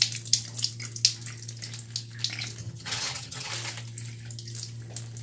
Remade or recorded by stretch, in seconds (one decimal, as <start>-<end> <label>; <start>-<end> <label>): 0.0-2.6 recorded; 2.6-3.5 remade; 3.5-5.2 recorded